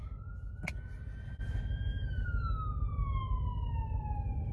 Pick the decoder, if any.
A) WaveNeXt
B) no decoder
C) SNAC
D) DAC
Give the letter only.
B